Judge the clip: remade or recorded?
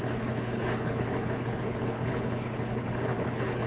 remade